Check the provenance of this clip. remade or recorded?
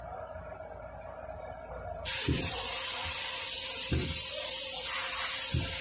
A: recorded